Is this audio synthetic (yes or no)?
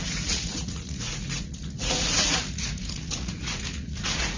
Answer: yes